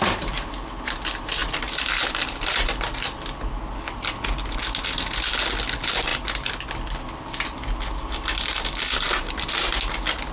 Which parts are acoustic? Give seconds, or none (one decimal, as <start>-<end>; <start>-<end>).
0.0-10.3